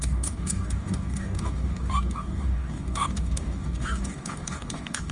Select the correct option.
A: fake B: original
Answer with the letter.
A